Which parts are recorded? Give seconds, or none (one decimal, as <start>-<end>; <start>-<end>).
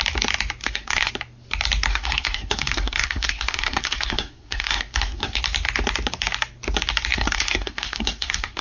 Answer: 0.0-0.6; 1.1-1.9; 5.4-7.1